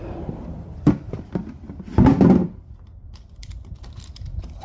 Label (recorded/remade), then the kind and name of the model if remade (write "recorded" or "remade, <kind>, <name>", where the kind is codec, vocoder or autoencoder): recorded